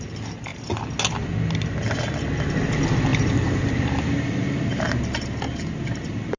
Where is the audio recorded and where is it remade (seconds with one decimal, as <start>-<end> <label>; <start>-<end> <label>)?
0.0-3.1 recorded; 3.1-6.4 remade